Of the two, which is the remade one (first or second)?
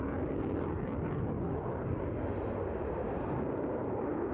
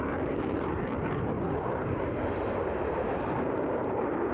second